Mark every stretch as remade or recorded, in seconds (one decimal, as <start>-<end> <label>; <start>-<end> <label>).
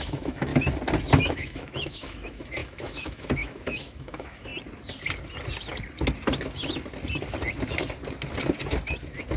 0.0-0.5 remade; 0.5-1.2 recorded; 1.2-4.5 remade; 4.5-9.4 recorded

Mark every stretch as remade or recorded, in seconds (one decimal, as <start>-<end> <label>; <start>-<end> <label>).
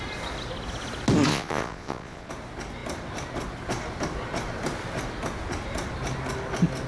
0.0-1.3 recorded; 1.3-2.3 remade; 2.3-6.9 recorded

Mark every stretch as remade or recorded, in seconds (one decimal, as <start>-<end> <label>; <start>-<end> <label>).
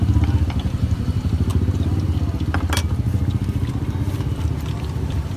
0.0-1.5 remade; 1.5-4.3 recorded; 4.3-5.4 remade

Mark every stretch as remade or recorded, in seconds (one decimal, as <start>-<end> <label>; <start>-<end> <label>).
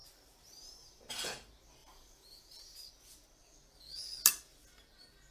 0.0-1.0 remade; 1.0-1.8 recorded; 1.8-2.9 remade; 2.9-5.3 recorded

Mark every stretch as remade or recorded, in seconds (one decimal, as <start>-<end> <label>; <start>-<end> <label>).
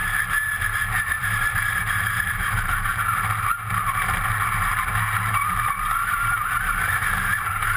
0.0-1.0 recorded; 1.0-2.9 remade; 2.9-6.1 recorded; 6.1-7.8 remade